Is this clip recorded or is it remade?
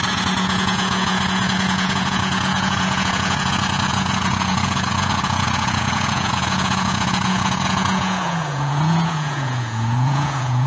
remade